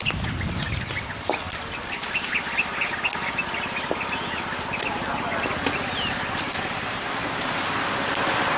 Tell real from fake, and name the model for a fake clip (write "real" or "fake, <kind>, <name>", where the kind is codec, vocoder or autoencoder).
real